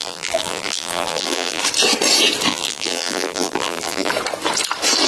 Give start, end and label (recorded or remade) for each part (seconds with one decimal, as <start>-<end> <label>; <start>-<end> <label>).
0.0-1.6 remade; 1.6-2.5 recorded; 2.5-4.1 remade; 4.1-5.1 recorded